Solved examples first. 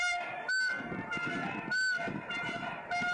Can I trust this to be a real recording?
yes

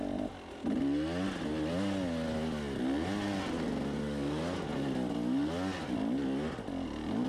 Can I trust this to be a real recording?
yes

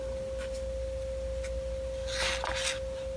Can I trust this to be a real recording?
yes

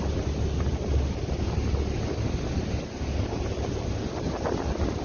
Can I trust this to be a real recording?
yes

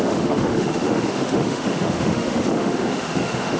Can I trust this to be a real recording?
no